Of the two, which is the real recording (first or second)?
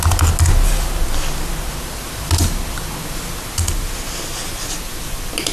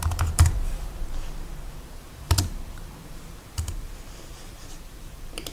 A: first